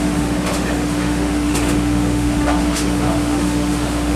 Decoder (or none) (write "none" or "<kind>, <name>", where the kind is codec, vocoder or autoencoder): autoencoder, DAC-VAE